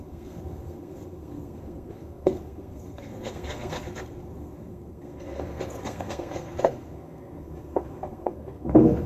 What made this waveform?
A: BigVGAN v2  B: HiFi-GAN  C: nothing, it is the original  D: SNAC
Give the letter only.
D